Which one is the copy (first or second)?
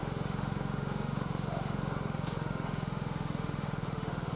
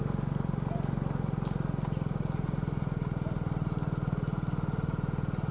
first